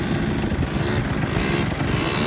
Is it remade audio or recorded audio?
recorded